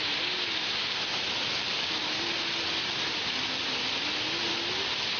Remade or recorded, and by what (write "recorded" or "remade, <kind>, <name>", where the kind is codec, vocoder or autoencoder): recorded